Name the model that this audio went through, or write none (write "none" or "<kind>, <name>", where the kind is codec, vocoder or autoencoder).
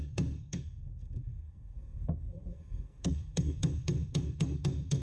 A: codec, SNAC